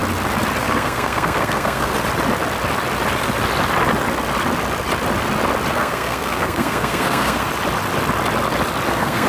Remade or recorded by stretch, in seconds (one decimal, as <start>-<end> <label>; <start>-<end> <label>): 0.0-0.6 recorded; 0.6-1.9 remade; 1.9-5.7 recorded; 5.7-7.5 remade; 7.5-8.9 recorded; 8.9-9.3 remade